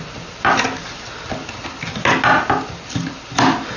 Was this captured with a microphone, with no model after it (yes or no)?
yes